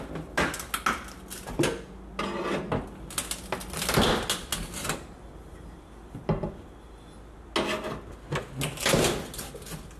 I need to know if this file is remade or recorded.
recorded